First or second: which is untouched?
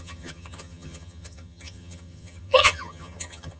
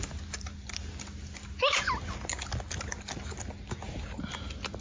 second